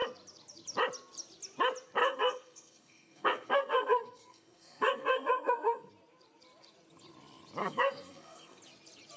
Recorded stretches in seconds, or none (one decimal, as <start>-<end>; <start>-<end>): 0.0-2.0; 5.9-7.6; 8.6-9.2